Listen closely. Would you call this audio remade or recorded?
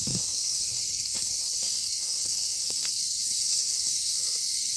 remade